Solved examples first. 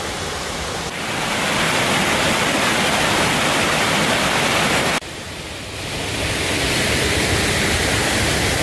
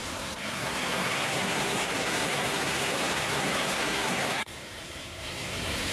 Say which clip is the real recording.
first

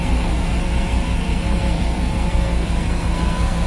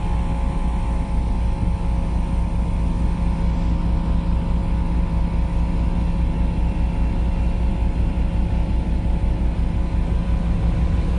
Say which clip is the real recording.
second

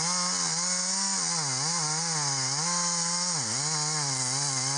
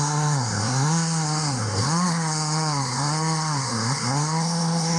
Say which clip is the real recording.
first